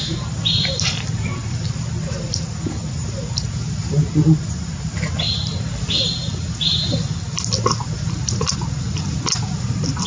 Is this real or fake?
real